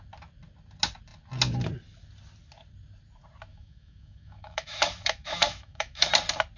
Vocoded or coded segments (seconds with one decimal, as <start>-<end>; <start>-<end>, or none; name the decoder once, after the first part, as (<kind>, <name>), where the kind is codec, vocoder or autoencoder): 3.5-6.1 (autoencoder, DAC-VAE)